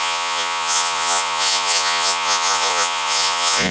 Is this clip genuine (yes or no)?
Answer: no